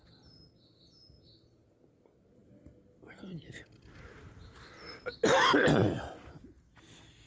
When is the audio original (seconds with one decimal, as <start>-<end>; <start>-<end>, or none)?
0.0-7.3